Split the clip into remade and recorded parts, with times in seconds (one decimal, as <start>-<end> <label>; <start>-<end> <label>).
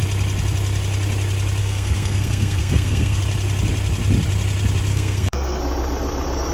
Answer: 0.0-1.6 recorded; 1.6-3.2 remade; 3.2-4.9 recorded; 4.9-5.6 remade; 5.6-6.5 recorded